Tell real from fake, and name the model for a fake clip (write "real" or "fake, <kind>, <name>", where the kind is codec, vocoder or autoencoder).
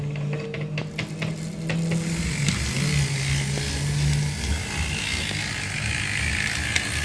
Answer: real